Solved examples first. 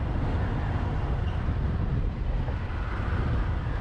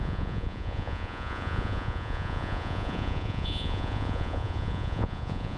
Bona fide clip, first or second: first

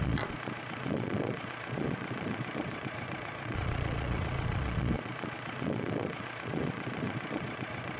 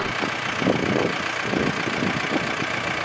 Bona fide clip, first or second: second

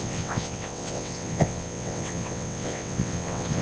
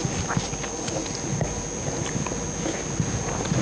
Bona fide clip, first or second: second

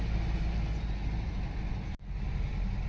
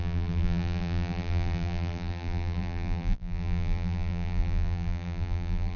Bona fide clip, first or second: first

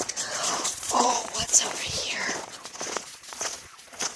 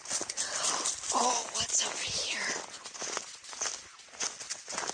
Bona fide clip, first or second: second